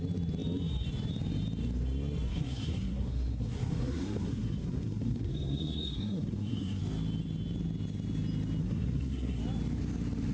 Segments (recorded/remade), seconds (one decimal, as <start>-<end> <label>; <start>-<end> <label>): 0.0-2.3 recorded; 2.3-6.8 remade; 6.8-8.6 recorded; 8.6-9.4 remade; 9.4-10.3 recorded